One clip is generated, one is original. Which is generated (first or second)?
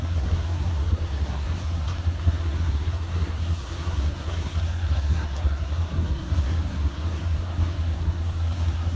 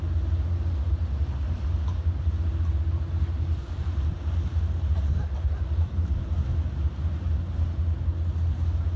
first